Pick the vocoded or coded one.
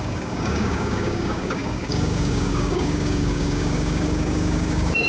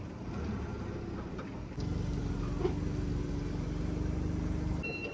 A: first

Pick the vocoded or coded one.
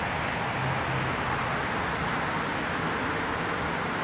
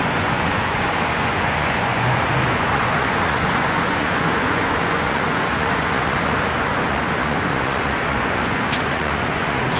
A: second